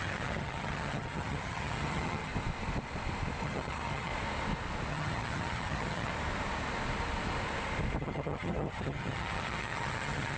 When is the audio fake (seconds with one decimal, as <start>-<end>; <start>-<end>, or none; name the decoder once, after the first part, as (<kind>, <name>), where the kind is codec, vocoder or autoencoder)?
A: 0.0-2.3 (vocoder, HiFi-GAN); 3.4-4.1; 4.9-6.1; 8.0-10.4